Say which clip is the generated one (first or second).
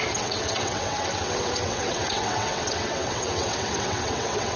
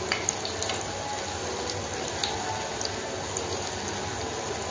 first